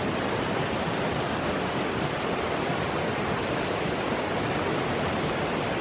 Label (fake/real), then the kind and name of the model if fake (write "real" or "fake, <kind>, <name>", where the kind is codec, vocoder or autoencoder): real